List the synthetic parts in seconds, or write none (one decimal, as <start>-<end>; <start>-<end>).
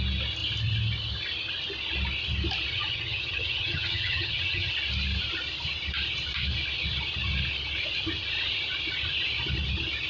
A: 2.7-4.7